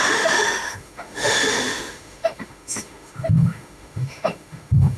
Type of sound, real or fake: fake